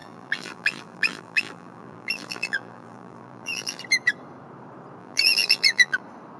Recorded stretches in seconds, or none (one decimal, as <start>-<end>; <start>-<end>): 3.8-5.0; 6.0-6.4